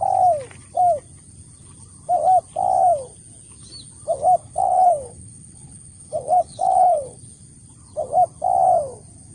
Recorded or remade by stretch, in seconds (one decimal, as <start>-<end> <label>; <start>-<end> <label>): 0.0-4.4 recorded; 4.4-7.2 remade; 7.2-9.3 recorded